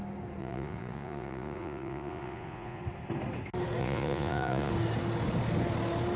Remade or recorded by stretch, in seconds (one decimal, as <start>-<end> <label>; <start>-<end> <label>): 0.0-0.4 recorded; 0.4-2.8 remade; 2.8-3.8 recorded; 3.8-4.7 remade; 4.7-6.2 recorded